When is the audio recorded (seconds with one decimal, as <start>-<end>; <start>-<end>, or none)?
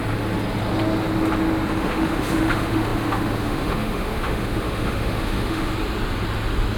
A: 0.0-1.7; 5.7-6.8